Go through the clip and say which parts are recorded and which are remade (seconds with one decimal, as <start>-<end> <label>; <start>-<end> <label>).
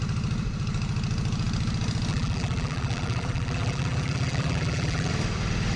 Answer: 0.0-2.1 recorded; 2.1-5.1 remade; 5.1-5.8 recorded